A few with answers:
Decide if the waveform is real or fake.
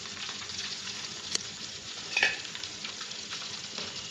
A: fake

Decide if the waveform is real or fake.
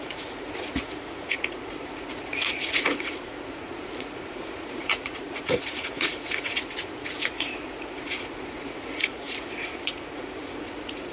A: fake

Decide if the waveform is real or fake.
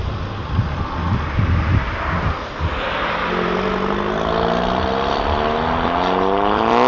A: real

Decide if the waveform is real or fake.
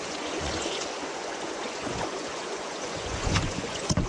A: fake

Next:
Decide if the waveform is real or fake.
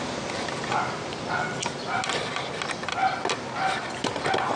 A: real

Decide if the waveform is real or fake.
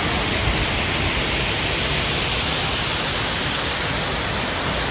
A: real